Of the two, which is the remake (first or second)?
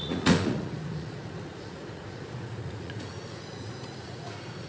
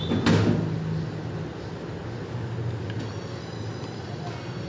first